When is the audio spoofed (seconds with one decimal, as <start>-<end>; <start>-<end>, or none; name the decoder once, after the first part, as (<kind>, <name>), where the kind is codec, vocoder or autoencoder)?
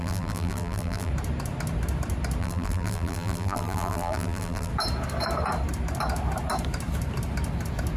0.0-1.1 (vocoder, BigVGAN v2); 2.4-4.7